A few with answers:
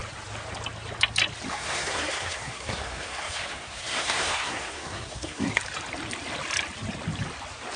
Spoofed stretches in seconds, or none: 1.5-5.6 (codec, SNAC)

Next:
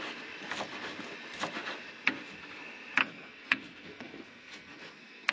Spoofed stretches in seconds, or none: 3.0-5.3 (codec, SNAC)

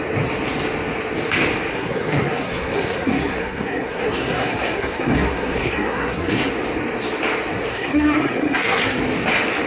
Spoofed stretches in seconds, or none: 1.7-6.5 (codec, SNAC); 7.7-9.0

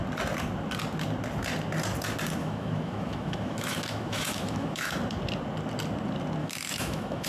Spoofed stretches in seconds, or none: 2.4-4.9 (autoencoder, DAC-VAE); 6.4-7.3

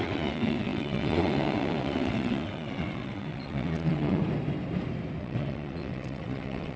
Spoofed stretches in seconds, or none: 0.0-4.2 (vocoder, WaveNeXt); 5.2-6.8

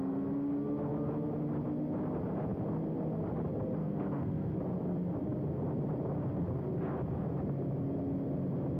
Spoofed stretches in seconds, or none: 3.8-4.6 (codec, SNAC)

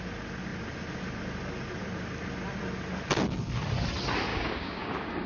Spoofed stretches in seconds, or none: 4.3-5.3 (codec, DAC)